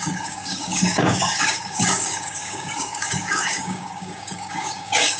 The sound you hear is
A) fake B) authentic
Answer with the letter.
A